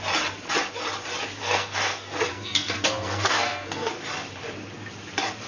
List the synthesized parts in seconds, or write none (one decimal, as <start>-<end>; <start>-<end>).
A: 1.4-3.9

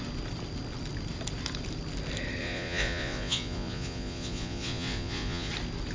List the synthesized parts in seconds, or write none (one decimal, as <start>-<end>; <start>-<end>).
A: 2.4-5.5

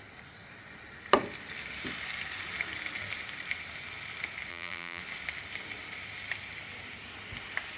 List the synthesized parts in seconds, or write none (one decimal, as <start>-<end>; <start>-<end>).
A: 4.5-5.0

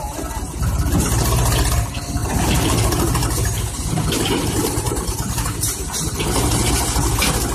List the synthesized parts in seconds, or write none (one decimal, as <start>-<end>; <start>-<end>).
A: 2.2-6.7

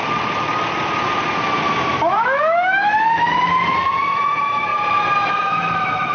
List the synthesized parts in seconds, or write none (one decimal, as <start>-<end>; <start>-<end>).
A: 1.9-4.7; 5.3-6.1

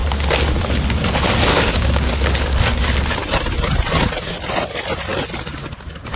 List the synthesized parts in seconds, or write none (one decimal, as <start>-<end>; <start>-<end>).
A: 1.5-2.1

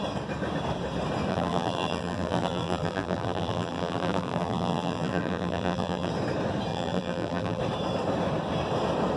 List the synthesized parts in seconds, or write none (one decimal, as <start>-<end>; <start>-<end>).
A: 1.3-6.1; 6.7-7.6